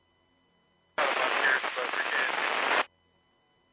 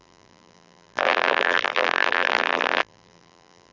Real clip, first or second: first